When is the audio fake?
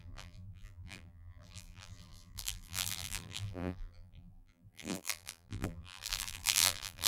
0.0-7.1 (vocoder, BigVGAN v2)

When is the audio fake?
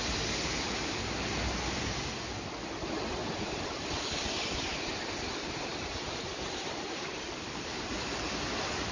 3.2-3.9 (vocoder, BigVGAN v2); 5.7-7.9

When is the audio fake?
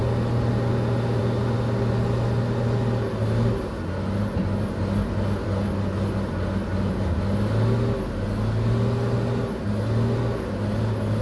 none